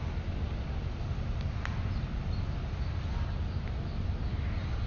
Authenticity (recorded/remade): recorded